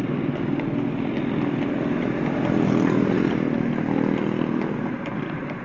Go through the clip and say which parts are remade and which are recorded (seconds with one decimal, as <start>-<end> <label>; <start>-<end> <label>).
0.0-5.6 recorded